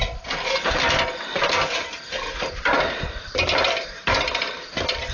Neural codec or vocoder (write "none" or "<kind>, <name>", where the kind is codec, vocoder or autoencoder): none